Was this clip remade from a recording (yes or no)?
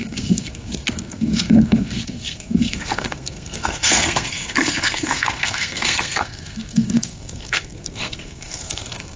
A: yes